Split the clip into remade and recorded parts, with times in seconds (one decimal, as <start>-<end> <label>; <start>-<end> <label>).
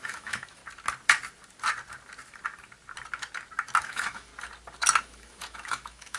0.0-0.6 remade; 0.6-3.8 recorded; 3.8-4.3 remade; 4.3-5.0 recorded; 5.0-6.2 remade